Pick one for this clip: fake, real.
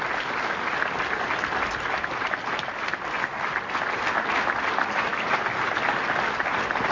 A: real